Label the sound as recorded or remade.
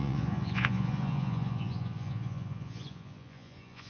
remade